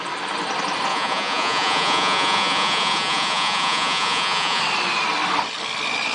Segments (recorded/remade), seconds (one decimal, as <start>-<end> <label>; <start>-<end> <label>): 0.0-0.9 recorded; 0.9-4.6 remade; 4.6-6.1 recorded